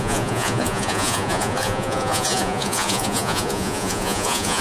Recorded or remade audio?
remade